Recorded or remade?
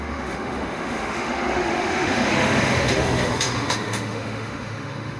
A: remade